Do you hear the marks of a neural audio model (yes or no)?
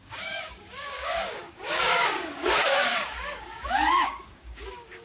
yes